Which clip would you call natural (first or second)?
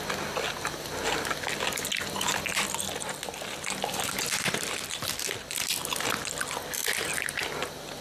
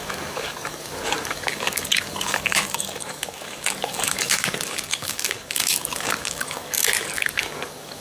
first